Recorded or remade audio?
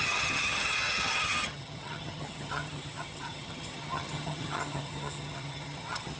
remade